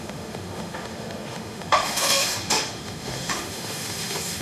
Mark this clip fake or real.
fake